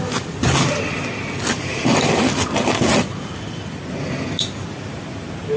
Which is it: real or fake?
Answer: real